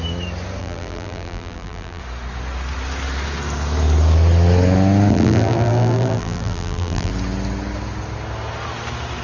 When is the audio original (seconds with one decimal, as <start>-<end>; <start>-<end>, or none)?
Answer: 0.0-0.6; 2.0-5.1; 7.1-9.2